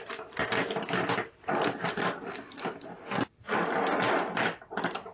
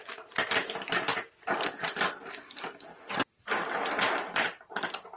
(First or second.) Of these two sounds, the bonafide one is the first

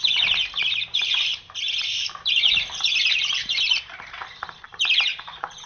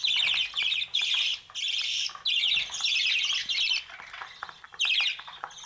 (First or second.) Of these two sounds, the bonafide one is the second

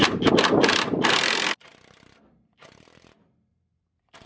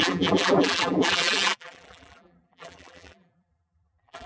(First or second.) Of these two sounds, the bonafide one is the first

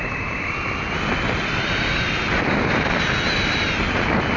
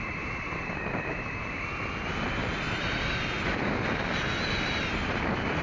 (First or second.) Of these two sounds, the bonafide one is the second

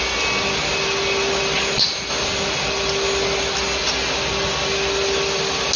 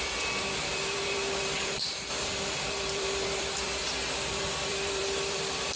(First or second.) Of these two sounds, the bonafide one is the first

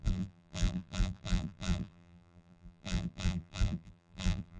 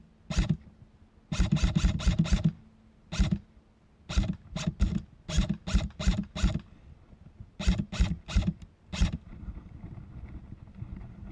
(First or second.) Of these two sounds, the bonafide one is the second